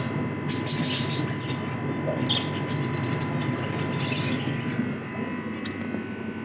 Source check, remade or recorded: recorded